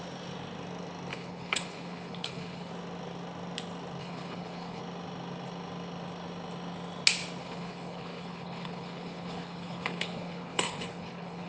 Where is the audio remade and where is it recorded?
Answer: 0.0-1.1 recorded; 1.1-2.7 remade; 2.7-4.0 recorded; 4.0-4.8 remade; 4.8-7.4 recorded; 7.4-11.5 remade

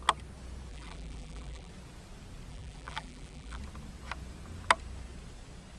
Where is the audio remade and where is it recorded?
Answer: 0.0-0.7 recorded; 0.7-1.7 remade; 1.7-2.5 recorded; 2.5-3.6 remade; 3.6-5.8 recorded

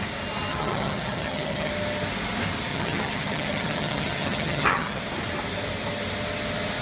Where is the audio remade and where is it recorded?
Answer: 0.0-0.5 recorded; 0.5-1.7 remade; 1.7-2.7 recorded; 2.7-5.0 remade; 5.0-6.8 recorded

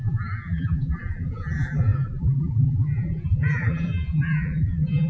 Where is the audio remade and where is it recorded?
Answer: 0.0-5.1 remade